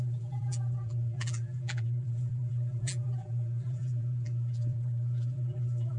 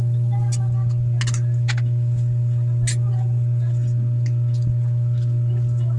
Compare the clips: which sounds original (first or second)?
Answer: second